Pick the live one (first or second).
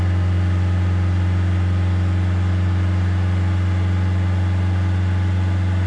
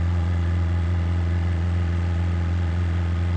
first